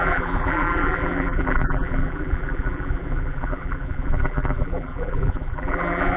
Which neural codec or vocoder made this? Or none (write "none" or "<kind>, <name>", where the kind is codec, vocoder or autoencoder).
vocoder, BigVGAN v2